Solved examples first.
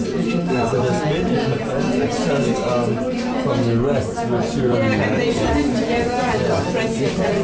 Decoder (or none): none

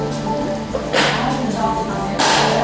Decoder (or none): none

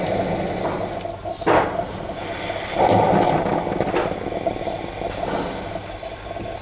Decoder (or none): none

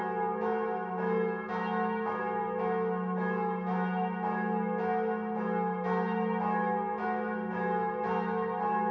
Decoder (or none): none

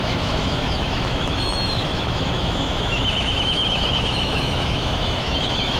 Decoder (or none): autoencoder, DAC-VAE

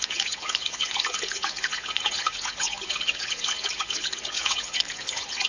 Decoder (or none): vocoder, Vocos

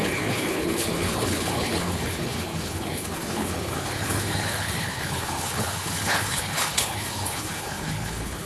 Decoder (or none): codec, HILCodec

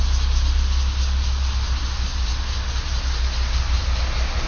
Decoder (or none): none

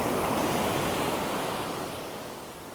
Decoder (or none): codec, DAC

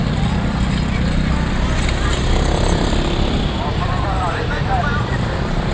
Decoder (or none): vocoder, BigVGAN v2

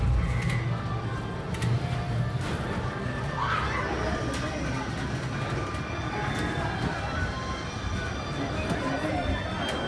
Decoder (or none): none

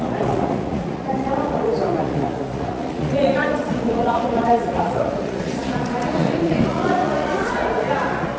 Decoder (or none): vocoder, Vocos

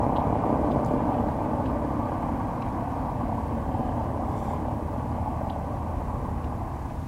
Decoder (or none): none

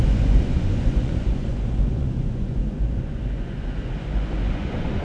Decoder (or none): vocoder, Vocos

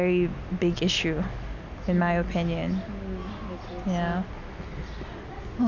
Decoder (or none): none